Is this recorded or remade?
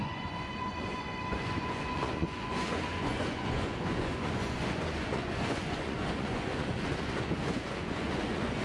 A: remade